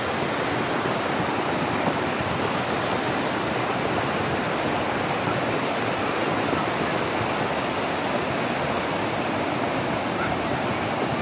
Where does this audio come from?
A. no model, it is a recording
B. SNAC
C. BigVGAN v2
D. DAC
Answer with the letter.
A